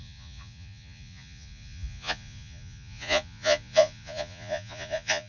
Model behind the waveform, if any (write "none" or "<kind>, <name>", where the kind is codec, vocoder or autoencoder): vocoder, Vocos